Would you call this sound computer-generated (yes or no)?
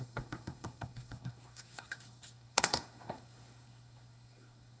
yes